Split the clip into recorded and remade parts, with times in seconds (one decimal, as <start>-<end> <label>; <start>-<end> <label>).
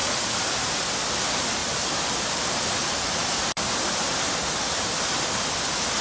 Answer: 0.0-0.9 remade; 0.9-1.6 recorded; 1.6-4.3 remade; 4.3-6.0 recorded